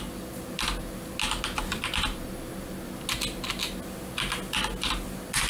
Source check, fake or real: real